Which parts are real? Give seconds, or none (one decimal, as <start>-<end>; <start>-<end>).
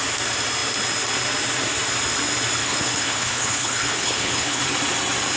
0.0-2.6; 4.6-5.4